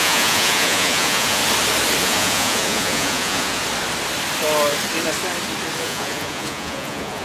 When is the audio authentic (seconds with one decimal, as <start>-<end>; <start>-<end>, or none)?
1.4-2.0; 3.6-5.8